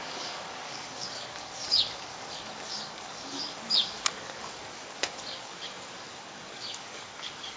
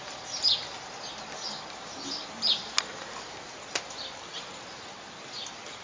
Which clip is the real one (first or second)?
second